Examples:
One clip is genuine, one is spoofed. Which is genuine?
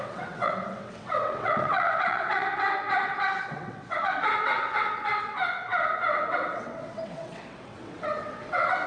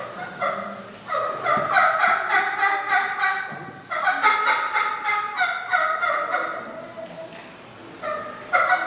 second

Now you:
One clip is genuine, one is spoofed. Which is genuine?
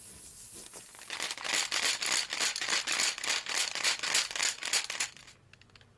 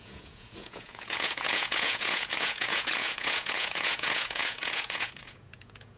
first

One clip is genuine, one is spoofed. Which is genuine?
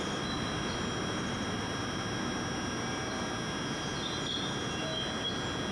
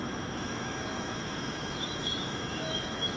first